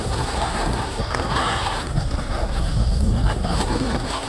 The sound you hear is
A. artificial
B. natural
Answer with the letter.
A